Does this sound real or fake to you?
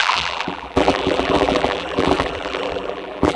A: fake